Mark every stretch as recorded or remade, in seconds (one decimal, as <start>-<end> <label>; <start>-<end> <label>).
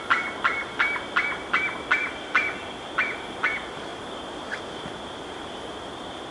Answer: 0.0-6.3 recorded